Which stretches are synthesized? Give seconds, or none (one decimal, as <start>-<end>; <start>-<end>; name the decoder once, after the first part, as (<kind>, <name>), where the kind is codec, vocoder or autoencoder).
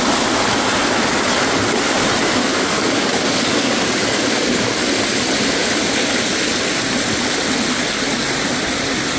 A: 2.4-4.8 (codec, DAC)